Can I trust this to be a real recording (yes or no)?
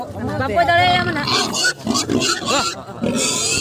yes